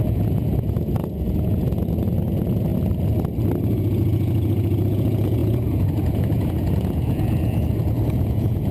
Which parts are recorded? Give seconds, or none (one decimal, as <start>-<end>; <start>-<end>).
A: 2.7-3.6